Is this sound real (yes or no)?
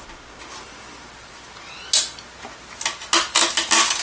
yes